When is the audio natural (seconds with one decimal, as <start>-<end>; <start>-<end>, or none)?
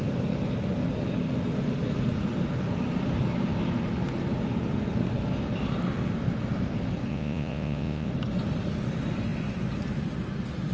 0.0-7.1; 8.1-10.7